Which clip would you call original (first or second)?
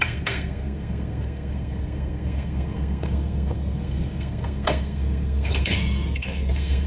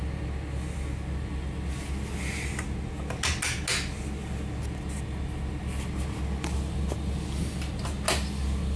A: second